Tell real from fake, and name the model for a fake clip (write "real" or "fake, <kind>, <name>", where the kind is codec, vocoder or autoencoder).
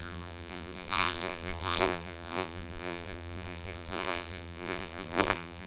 fake, vocoder, BigVGAN v2